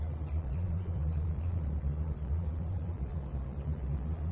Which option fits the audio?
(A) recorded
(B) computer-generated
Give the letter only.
B